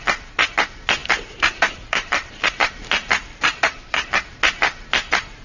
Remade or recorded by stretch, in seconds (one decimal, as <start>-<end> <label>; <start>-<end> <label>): 0.0-1.0 recorded; 1.0-4.2 remade; 4.2-5.4 recorded